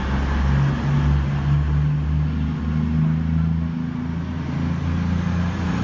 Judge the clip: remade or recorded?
recorded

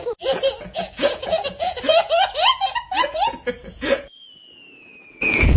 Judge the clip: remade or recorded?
remade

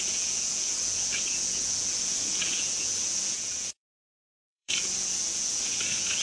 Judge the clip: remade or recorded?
remade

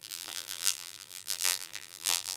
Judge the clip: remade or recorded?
remade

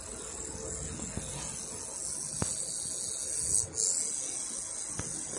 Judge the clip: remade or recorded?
recorded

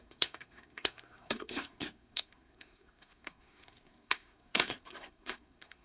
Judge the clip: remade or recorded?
remade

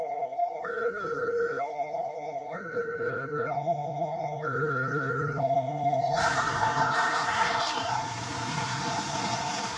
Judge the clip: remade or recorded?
remade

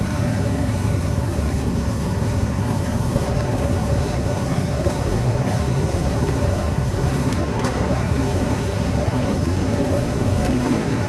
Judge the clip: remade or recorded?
remade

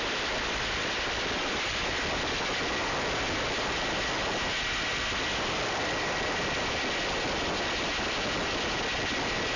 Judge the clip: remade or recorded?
recorded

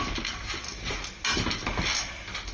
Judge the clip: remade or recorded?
recorded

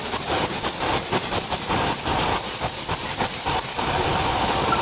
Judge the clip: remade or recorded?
remade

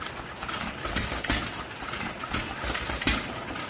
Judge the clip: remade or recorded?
remade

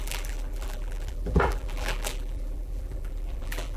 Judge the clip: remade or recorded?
remade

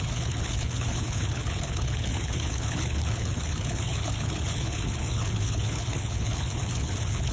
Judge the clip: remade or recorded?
remade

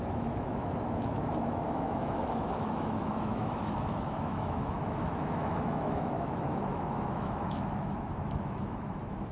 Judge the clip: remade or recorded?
remade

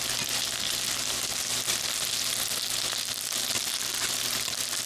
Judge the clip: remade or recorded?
recorded